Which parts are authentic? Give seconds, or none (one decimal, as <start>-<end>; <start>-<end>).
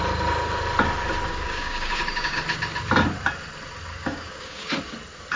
0.0-1.3; 2.4-3.9; 4.8-5.4